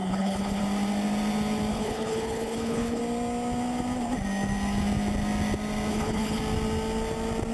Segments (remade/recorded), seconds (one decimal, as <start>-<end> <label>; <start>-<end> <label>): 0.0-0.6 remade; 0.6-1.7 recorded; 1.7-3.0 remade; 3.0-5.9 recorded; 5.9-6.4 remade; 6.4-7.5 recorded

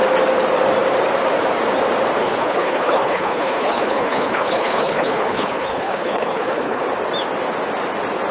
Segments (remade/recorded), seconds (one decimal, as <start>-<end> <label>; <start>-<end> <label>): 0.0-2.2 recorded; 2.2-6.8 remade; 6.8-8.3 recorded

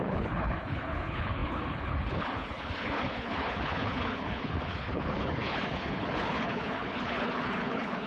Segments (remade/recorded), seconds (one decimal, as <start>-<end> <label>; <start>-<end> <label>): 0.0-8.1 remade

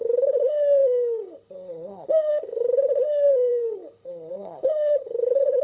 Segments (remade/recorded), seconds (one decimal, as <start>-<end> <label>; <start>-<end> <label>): 0.0-5.6 remade